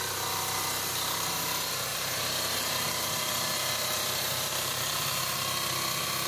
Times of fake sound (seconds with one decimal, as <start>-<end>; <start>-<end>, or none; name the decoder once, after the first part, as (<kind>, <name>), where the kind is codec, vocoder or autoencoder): 1.9-5.2 (vocoder, BigVGAN v2)